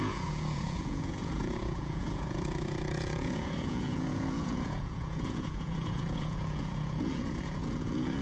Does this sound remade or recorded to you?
remade